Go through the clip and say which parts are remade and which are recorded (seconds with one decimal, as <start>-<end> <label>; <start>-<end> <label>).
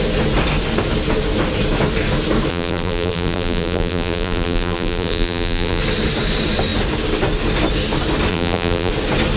0.0-2.5 recorded; 2.5-5.8 remade; 5.8-8.3 recorded; 8.3-8.9 remade; 8.9-9.4 recorded